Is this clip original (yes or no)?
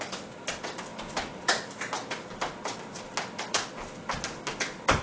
yes